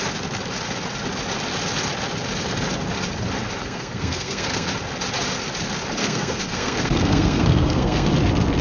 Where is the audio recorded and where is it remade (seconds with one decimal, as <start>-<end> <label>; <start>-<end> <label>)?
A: 0.0-3.6 recorded; 3.6-4.7 remade; 4.7-6.0 recorded; 6.0-8.1 remade; 8.1-8.6 recorded